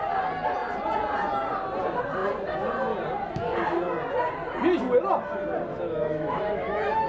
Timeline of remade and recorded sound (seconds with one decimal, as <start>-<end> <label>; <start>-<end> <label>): 0.0-5.7 recorded; 5.7-7.1 remade